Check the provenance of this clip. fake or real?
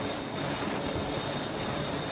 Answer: real